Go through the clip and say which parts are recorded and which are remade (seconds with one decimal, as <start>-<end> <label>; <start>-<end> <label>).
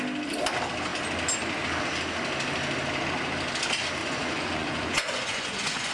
0.0-4.0 recorded; 4.0-5.9 remade